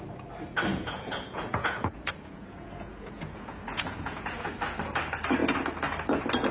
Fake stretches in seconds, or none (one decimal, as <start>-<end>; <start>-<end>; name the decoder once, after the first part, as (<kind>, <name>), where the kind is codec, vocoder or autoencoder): 0.7-4.5 (vocoder, Vocos)